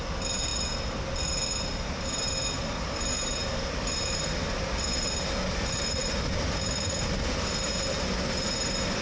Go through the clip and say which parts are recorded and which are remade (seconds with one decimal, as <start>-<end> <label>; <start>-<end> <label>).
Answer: 0.0-9.0 recorded